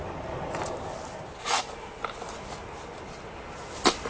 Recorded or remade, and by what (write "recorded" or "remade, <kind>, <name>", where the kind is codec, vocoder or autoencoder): recorded